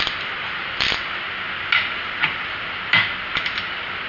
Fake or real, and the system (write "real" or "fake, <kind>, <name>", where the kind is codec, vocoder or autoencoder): real